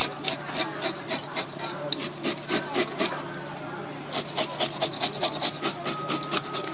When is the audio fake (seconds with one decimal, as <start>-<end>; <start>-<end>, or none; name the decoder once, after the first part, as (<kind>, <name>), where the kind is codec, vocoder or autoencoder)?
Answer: none